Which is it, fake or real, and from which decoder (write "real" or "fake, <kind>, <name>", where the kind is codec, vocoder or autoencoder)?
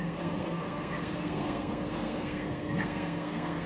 fake, codec, SNAC